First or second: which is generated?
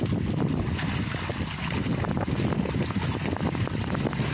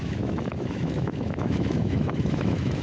second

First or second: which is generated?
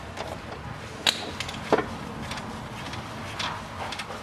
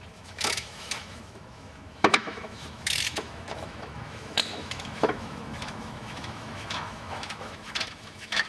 second